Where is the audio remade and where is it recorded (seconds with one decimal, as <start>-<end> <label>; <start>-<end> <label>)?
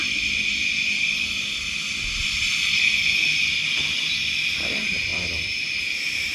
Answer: 0.0-6.3 recorded